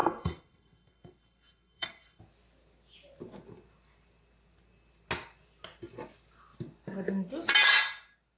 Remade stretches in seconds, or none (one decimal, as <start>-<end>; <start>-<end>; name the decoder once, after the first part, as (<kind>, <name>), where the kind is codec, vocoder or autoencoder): 0.0-2.2 (codec, SNAC)